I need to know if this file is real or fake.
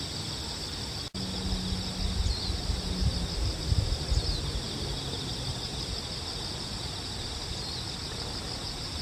real